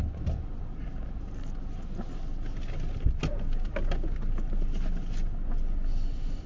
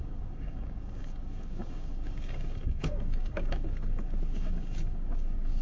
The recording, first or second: first